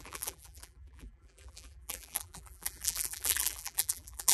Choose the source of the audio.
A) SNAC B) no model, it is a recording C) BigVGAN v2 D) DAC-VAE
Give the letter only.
C